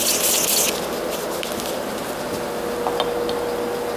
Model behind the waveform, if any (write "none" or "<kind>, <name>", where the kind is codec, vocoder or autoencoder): none